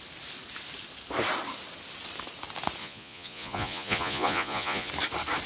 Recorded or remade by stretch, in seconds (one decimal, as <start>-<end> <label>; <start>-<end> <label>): 0.0-2.8 recorded; 2.8-4.9 remade; 4.9-5.5 recorded